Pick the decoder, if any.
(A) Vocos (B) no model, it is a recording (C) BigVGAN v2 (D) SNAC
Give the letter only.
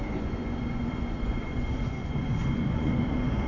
A